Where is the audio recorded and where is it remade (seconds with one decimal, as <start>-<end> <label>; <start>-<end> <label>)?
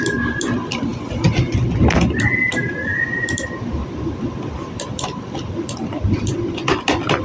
0.0-2.9 recorded; 2.9-6.7 remade; 6.7-7.2 recorded